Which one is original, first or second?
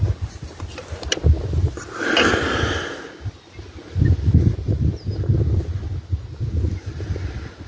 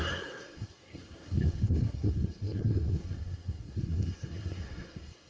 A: first